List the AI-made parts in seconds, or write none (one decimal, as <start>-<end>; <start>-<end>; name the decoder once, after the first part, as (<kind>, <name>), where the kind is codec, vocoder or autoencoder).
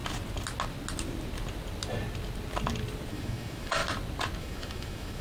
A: 3.1-3.8 (autoencoder, DAC-VAE); 4.4-5.2